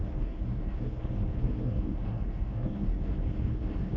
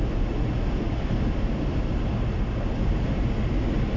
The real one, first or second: second